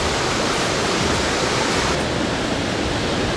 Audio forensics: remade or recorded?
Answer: recorded